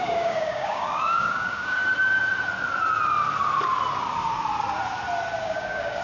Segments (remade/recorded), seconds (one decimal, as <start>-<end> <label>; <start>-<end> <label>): 0.0-1.8 remade; 1.8-5.4 recorded; 5.4-6.0 remade